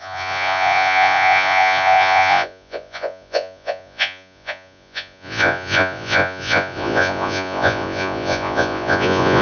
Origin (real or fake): fake